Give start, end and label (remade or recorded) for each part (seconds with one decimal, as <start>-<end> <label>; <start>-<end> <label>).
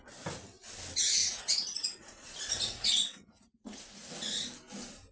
0.0-1.2 recorded; 1.2-4.1 remade; 4.1-5.1 recorded